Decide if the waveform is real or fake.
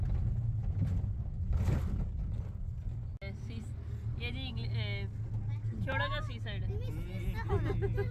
real